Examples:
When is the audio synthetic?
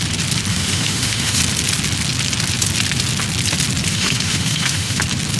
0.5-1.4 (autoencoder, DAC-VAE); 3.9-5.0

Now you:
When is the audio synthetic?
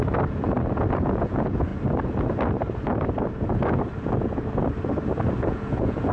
0.9-1.7 (vocoder, Vocos); 5.4-6.1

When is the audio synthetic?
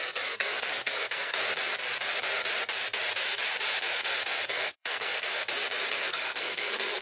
0.0-1.4 (codec, SNAC); 4.5-5.4; 5.9-7.0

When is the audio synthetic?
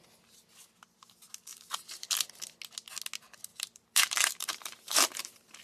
1.5-2.1 (vocoder, BigVGAN v2); 3.5-5.6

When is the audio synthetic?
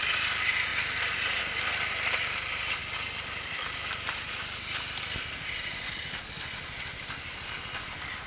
none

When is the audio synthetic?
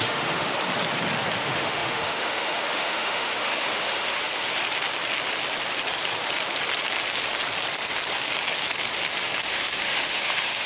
0.0-0.5 (autoencoder, DAC-VAE); 1.4-4.6; 9.5-10.7